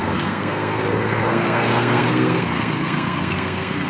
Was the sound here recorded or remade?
remade